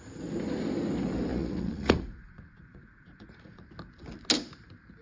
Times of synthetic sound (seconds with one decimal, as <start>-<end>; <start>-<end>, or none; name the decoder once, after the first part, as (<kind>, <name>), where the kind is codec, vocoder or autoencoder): 1.3-3.6 (vocoder, Vocos)

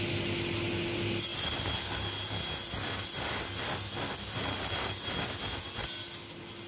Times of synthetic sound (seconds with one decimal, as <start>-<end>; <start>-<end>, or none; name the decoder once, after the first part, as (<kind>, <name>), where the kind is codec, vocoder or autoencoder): none

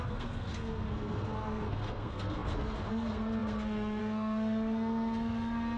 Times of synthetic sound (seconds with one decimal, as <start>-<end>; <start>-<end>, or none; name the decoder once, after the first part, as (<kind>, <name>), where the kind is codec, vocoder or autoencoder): 0.0-5.8 (codec, SNAC)

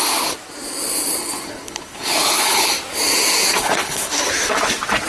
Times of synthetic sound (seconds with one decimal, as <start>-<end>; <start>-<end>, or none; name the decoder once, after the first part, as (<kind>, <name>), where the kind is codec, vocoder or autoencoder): 1.2-2.7 (codec, HILCodec); 3.5-4.1

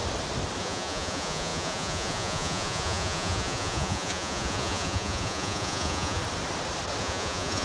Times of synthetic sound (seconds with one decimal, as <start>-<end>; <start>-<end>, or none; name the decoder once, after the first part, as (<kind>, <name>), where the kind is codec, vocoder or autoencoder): 0.6-6.2 (vocoder, Vocos); 7.0-7.6

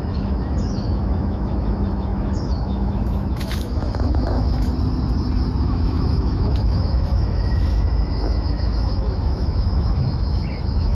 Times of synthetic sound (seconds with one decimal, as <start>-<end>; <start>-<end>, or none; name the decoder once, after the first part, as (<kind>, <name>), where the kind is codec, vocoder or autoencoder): 0.0-4.7 (autoencoder, DAC-VAE); 5.6-10.9

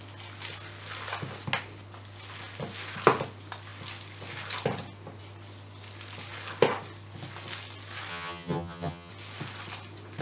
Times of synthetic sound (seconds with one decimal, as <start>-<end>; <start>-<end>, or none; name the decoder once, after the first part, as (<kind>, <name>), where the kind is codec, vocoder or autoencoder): 8.1-9.1 (vocoder, HiFi-GAN)